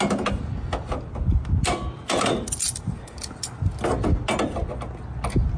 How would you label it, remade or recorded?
recorded